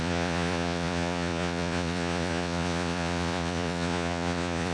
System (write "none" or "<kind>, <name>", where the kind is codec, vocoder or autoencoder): vocoder, Vocos